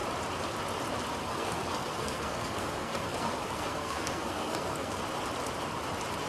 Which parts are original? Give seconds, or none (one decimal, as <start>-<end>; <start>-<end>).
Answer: 0.0-1.2; 5.0-6.3